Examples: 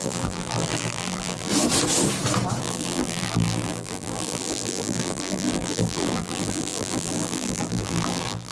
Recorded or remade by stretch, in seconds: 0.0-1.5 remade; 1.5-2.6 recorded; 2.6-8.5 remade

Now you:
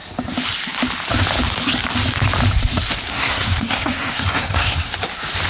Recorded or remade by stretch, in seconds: 0.0-3.1 recorded; 3.1-4.9 remade; 4.9-5.5 recorded

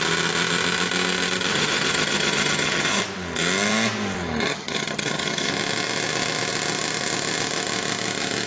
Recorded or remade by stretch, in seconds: 0.0-1.5 recorded; 1.5-3.0 remade; 3.0-4.5 recorded; 4.5-5.5 remade; 5.5-8.5 recorded

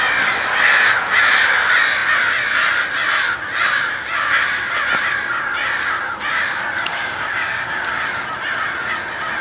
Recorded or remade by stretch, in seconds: 0.0-6.9 recorded; 6.9-8.0 remade; 8.0-9.4 recorded

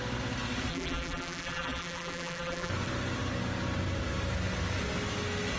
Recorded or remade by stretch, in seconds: 0.0-0.7 recorded; 0.7-2.7 remade; 2.7-5.6 recorded

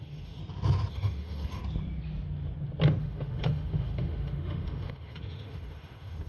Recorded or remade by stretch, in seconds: 0.0-0.4 remade; 0.4-0.9 recorded; 0.9-1.6 remade; 1.6-3.0 recorded; 3.0-6.3 remade